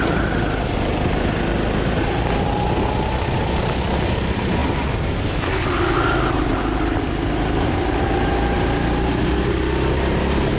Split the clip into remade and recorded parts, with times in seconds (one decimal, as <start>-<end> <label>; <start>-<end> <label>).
0.0-10.6 recorded